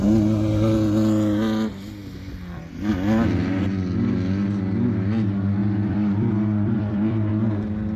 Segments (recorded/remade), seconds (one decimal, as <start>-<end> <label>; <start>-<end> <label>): 0.0-5.6 recorded; 5.6-7.3 remade; 7.3-8.0 recorded